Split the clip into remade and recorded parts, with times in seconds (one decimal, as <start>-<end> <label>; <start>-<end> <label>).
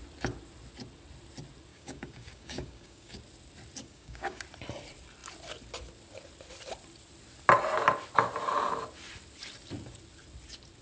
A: 0.0-1.7 recorded; 1.7-3.2 remade; 3.2-3.8 recorded; 3.8-4.4 remade; 4.4-10.8 recorded